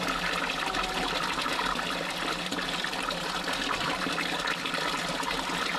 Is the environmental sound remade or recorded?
recorded